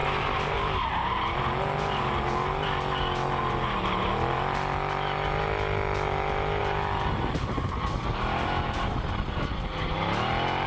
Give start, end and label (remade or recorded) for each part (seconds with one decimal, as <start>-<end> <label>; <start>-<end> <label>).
0.0-10.7 recorded